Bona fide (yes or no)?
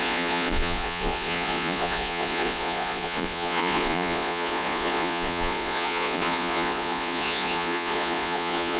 no